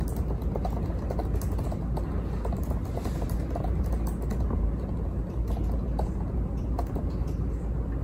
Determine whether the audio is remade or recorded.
recorded